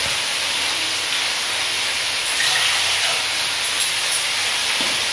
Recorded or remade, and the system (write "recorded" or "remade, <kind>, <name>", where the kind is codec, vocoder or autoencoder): recorded